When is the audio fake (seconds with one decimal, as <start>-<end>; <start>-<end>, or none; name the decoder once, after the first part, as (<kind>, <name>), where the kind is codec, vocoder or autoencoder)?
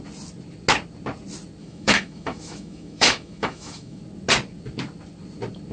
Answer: 1.6-4.0 (autoencoder, DAC-VAE)